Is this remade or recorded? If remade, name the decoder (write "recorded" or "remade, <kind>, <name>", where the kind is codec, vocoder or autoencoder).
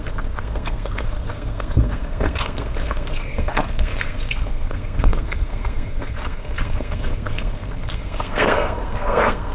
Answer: remade, codec, SNAC